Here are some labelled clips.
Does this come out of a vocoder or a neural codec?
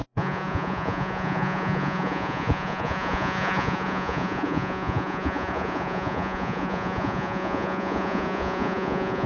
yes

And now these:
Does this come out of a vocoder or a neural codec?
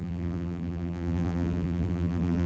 yes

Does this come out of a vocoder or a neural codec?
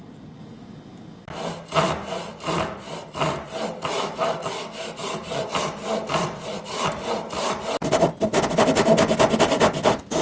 no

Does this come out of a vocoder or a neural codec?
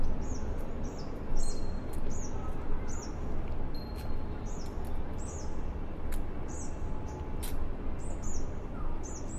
no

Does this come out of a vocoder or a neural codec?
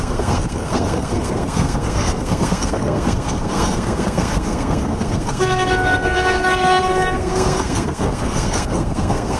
yes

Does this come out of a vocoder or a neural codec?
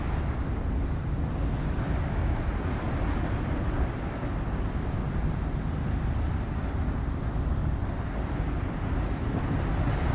no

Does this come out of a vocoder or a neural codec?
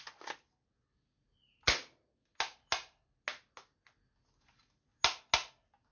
no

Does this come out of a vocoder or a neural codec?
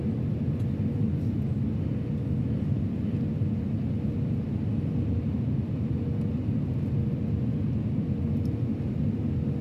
no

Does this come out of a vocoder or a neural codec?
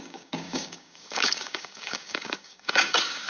yes